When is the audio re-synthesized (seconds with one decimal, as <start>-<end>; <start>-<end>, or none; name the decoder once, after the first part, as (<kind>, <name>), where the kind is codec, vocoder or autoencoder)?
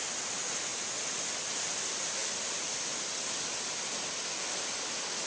none